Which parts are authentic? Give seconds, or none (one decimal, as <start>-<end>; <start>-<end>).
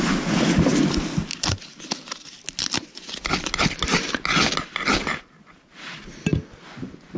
0.0-7.2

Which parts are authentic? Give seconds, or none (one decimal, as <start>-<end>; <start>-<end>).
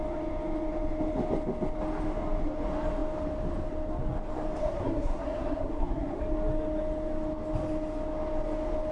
0.0-4.6; 6.2-8.9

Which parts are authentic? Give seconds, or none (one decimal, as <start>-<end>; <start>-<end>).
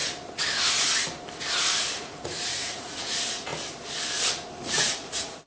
0.0-2.0; 3.5-4.6